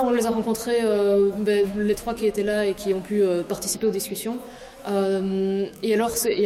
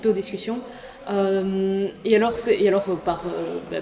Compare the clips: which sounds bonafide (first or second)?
second